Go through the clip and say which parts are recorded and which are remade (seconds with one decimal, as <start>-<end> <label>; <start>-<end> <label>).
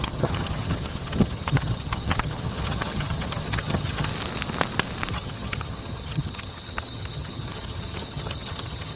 0.0-4.1 remade; 4.1-5.1 recorded; 5.1-9.0 remade